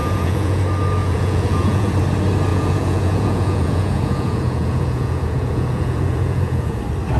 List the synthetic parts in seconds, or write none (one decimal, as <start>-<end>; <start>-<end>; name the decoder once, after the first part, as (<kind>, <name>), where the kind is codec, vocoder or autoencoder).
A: 0.0-0.6 (vocoder, Vocos); 1.0-1.9; 2.5-6.8